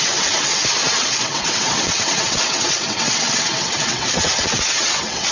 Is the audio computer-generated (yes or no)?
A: yes